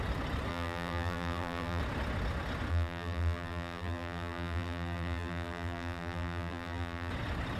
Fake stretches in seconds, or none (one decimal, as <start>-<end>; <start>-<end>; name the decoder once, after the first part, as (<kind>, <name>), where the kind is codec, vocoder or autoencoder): 0.5-1.8 (vocoder, BigVGAN v2); 2.7-7.1